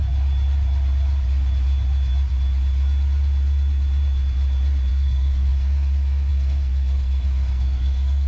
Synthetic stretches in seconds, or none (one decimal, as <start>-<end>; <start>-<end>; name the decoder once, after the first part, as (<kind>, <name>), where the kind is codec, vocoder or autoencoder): 4.9-8.3 (codec, SNAC)